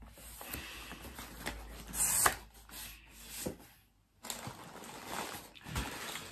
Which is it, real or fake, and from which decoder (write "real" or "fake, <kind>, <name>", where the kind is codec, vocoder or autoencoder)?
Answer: real